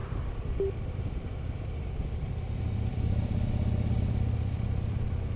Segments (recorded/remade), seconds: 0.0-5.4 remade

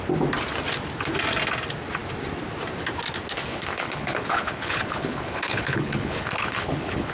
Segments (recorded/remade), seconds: 0.0-3.5 recorded; 3.5-7.1 remade